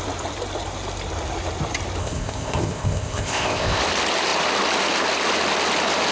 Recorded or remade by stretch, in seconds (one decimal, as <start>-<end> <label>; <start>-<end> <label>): 0.0-2.0 recorded; 2.0-3.8 remade; 3.8-6.1 recorded

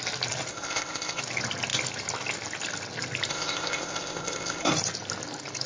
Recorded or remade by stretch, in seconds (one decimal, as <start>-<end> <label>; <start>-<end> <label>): 0.0-0.5 recorded; 0.5-1.2 remade; 1.2-3.3 recorded; 3.3-4.7 remade; 4.7-5.7 recorded

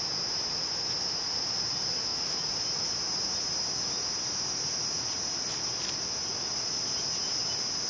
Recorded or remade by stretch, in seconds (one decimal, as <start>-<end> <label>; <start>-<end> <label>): 0.0-7.9 recorded

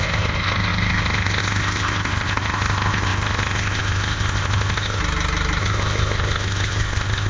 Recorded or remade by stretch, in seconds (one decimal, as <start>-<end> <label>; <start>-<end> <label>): 0.0-5.0 remade; 5.0-5.6 recorded; 5.6-7.3 remade

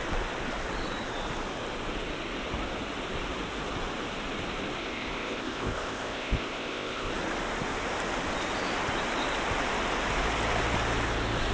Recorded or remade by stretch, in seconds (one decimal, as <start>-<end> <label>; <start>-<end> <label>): 0.0-4.8 recorded; 4.8-7.1 remade; 7.1-11.5 recorded

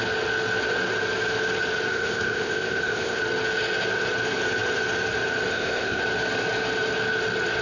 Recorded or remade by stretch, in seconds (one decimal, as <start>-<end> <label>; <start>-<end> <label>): 0.0-1.9 recorded; 1.9-3.2 remade; 3.2-5.5 recorded; 5.5-6.0 remade; 6.0-7.6 recorded

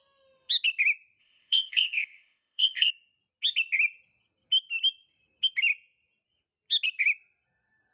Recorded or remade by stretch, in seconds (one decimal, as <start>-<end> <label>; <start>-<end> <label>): 0.0-1.2 recorded; 1.2-2.9 remade; 2.9-7.9 recorded

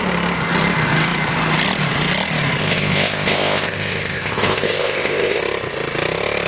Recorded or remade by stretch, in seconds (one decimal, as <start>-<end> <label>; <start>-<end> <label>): 0.0-2.6 recorded; 2.6-5.4 remade; 5.4-6.5 recorded